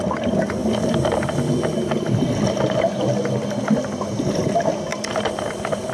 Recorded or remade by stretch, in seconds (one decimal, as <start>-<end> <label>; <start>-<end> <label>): 0.0-5.9 recorded